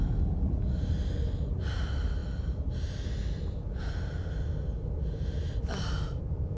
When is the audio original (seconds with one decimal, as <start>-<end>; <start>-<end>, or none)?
0.0-6.6